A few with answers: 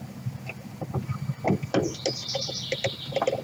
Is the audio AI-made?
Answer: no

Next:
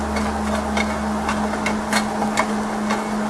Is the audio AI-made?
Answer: no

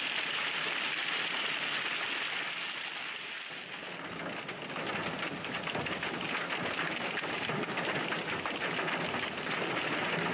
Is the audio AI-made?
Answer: no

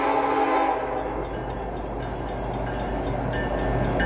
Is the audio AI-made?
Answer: no